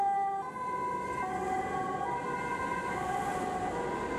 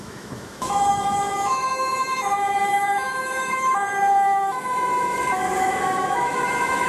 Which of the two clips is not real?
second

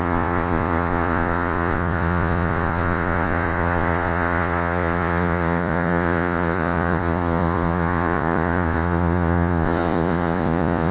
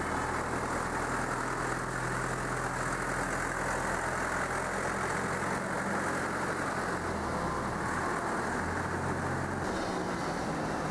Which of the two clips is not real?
first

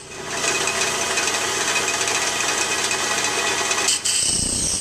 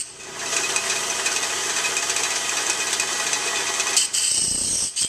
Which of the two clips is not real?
second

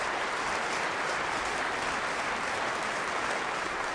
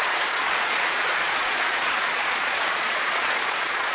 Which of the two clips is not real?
second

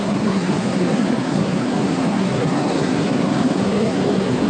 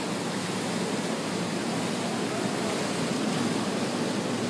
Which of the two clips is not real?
first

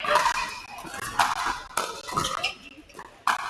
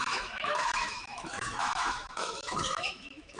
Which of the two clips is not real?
second